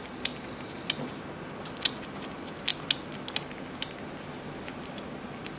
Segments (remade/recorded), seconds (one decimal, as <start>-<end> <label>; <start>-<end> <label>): 0.0-5.6 recorded